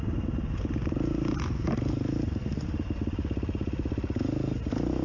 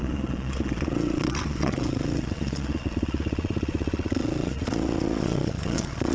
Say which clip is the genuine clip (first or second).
first